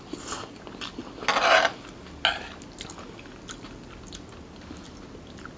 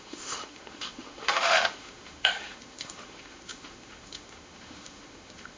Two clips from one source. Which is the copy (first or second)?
second